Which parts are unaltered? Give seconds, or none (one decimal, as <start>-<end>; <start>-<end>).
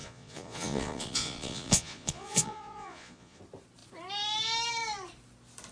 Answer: 3.4-5.7